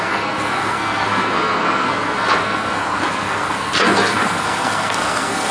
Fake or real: fake